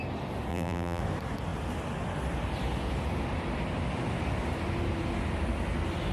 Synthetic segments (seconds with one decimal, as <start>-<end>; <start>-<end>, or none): 0.5-1.0